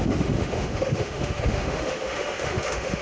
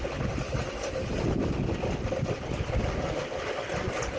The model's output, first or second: first